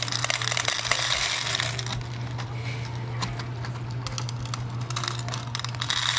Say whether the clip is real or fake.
real